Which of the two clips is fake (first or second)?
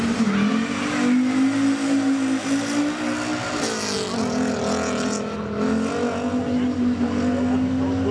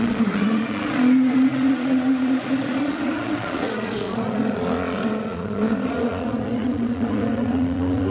second